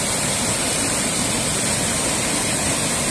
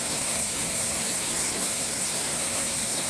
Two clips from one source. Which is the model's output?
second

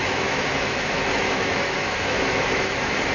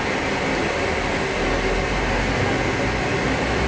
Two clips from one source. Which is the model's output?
first